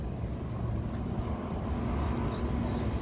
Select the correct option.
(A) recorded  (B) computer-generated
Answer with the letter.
A